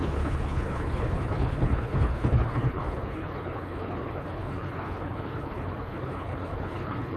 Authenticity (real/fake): fake